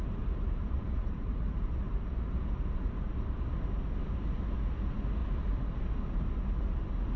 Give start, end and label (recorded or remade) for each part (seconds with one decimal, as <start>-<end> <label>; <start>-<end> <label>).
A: 0.0-3.5 remade; 3.5-5.2 recorded; 5.2-5.8 remade; 5.8-7.2 recorded